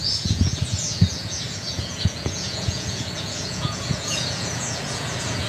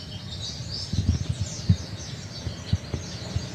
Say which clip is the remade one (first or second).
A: first